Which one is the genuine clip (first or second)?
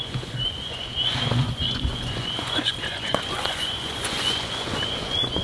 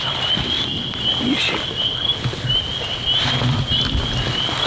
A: second